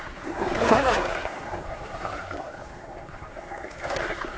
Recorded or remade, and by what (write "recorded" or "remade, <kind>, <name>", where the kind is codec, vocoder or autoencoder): remade, codec, SNAC